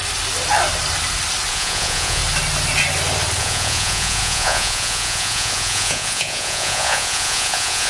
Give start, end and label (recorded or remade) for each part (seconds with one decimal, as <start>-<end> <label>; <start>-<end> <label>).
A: 0.0-1.5 recorded; 1.5-2.2 remade; 2.2-3.4 recorded; 3.4-7.9 remade